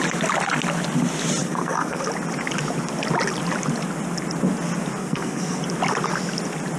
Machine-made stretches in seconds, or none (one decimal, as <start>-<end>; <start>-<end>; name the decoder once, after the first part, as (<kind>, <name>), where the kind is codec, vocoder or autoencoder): 1.4-2.0 (codec, SNAC); 5.0-5.6